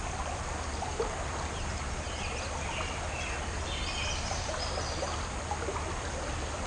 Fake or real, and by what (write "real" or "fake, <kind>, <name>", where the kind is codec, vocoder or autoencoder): real